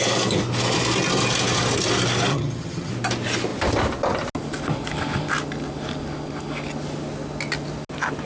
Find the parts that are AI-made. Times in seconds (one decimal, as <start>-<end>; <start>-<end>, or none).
2.3-2.9